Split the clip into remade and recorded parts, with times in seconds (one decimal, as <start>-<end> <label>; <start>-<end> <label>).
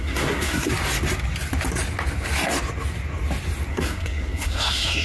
0.0-0.7 remade; 0.7-3.7 recorded; 3.7-5.0 remade